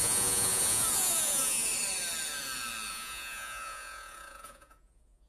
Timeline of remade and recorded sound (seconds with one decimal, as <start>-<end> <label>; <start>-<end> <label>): 0.0-1.7 remade; 1.7-2.9 recorded; 2.9-5.3 remade

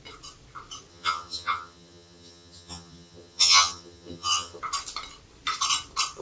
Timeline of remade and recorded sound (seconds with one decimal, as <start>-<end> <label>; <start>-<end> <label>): 0.0-0.9 recorded; 0.9-4.6 remade; 4.6-6.2 recorded

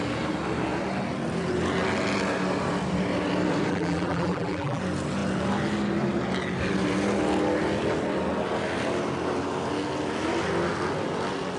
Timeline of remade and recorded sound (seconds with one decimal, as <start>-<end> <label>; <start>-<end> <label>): 0.0-3.7 recorded; 3.7-4.8 remade; 4.8-11.6 recorded

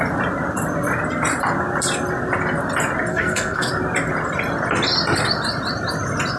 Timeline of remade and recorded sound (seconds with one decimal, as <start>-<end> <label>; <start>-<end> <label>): 0.0-3.1 recorded; 3.1-3.7 remade; 3.7-6.4 recorded

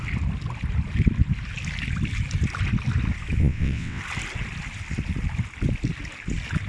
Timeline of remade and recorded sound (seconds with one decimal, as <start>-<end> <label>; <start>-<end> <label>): 0.0-3.4 recorded; 3.4-4.0 remade; 4.0-6.7 recorded